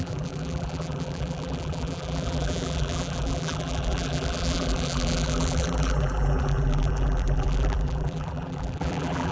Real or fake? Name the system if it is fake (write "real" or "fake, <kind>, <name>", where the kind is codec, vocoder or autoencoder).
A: fake, vocoder, BigVGAN v2